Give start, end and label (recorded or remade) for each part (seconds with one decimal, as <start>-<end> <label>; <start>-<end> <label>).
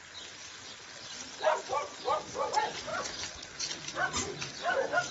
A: 0.0-5.1 recorded